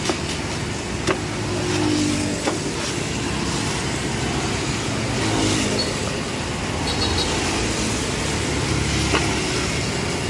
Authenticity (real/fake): real